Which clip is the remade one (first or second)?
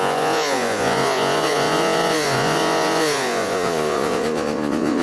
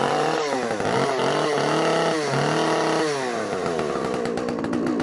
first